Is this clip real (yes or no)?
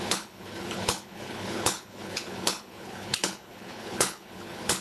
no